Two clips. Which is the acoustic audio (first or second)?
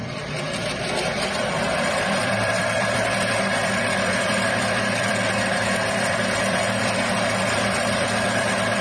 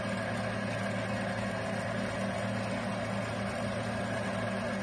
second